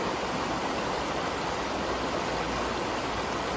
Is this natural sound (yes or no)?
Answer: yes